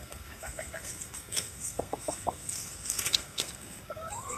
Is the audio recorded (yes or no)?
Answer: no